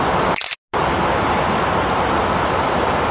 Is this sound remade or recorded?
recorded